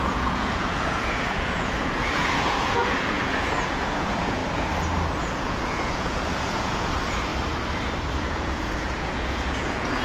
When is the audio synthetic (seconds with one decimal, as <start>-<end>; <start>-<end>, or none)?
0.0-4.4; 5.2-7.3; 8.2-10.0